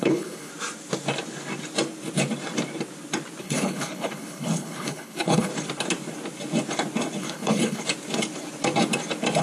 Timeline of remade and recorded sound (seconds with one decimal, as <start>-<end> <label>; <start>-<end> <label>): 0.0-0.5 remade; 0.5-3.4 recorded; 3.4-5.5 remade; 5.5-7.2 recorded; 7.2-7.8 remade; 7.8-9.4 recorded